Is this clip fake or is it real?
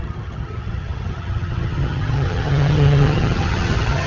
fake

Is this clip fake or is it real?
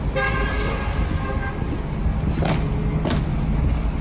real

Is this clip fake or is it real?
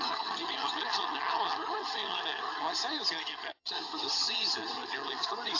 fake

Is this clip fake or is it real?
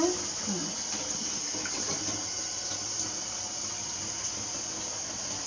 real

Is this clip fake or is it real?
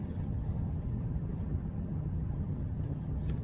fake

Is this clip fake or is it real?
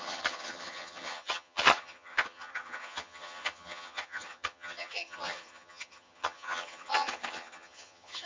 fake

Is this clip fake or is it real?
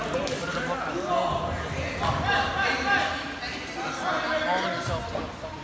real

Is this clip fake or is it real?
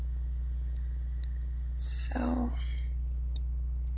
real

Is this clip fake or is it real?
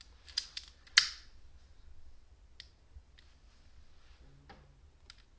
real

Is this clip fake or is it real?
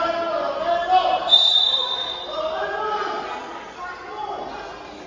real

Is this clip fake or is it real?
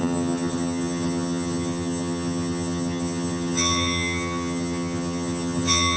fake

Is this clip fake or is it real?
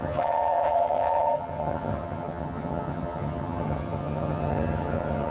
fake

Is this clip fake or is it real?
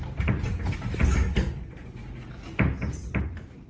real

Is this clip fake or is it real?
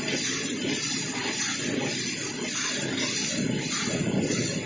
real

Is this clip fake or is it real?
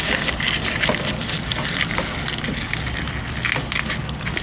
real